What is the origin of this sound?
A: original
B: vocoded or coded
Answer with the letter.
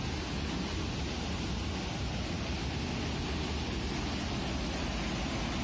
A